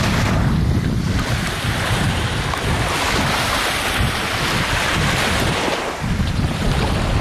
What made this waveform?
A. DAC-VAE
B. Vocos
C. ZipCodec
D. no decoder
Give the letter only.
D